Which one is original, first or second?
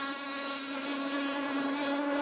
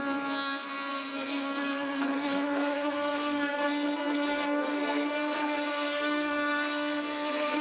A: first